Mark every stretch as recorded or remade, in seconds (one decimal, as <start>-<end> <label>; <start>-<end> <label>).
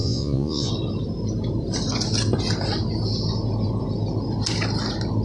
0.0-0.7 remade; 0.7-5.2 recorded